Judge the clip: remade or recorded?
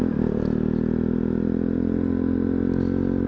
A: recorded